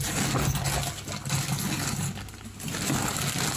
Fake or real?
real